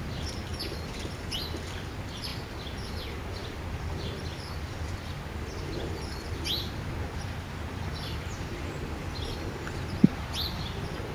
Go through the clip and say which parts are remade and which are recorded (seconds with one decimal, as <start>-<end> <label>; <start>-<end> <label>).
0.0-2.3 recorded; 2.3-2.9 remade; 2.9-11.1 recorded